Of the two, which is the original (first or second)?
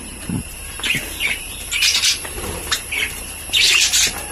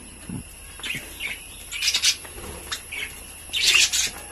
second